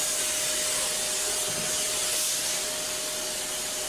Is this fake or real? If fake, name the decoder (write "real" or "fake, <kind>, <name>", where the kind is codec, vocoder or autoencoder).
real